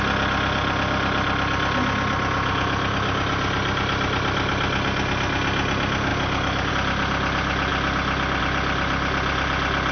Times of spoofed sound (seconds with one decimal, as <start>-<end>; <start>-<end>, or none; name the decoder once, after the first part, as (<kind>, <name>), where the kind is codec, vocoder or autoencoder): none